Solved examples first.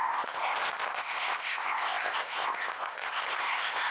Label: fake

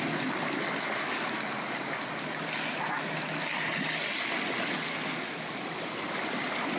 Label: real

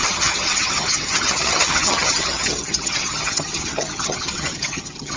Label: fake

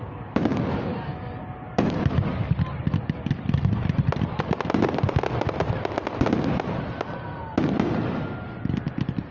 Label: real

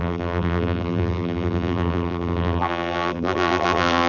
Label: fake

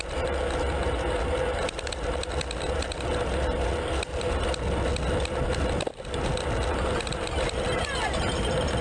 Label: real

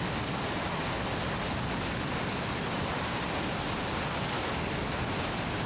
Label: real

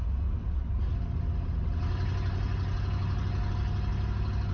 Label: real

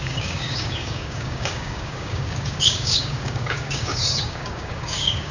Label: fake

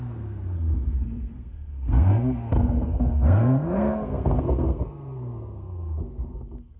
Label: fake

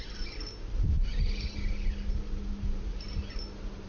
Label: real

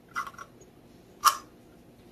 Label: real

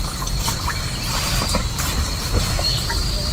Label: fake